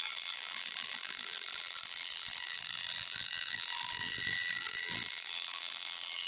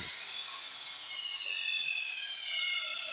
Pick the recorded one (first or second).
second